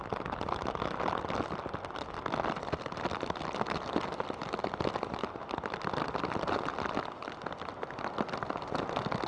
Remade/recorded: recorded